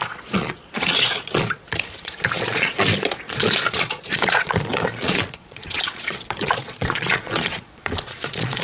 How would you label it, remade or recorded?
remade